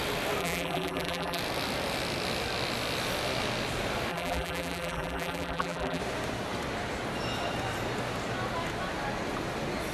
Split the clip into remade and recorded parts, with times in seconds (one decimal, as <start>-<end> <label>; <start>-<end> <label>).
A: 0.0-0.4 recorded; 0.4-1.4 remade; 1.4-4.1 recorded; 4.1-6.0 remade; 6.0-9.9 recorded